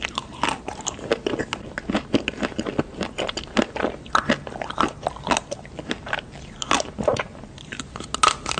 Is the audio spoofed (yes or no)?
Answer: no